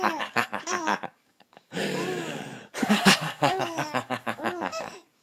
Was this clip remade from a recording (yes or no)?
yes